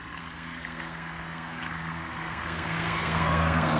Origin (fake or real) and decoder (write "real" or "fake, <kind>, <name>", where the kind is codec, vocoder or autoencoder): fake, codec, SNAC